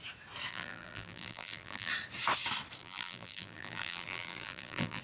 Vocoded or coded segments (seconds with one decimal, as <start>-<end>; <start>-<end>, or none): 0.5-1.9; 2.8-5.0

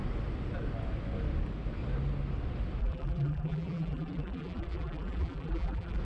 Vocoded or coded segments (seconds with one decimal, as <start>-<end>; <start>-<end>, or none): 2.8-6.0

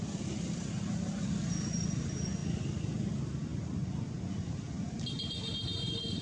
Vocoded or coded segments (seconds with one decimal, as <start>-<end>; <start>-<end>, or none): none

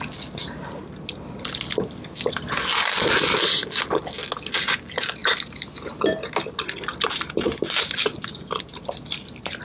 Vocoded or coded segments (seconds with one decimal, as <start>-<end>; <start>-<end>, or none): 5.2-5.9